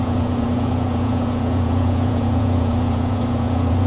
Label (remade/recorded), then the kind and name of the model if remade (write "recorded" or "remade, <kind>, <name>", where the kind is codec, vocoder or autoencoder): remade, vocoder, Vocos